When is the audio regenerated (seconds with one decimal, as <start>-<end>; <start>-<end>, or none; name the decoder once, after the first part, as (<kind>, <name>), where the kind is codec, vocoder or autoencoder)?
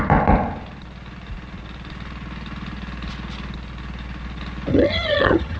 4.7-5.6 (vocoder, HiFi-GAN)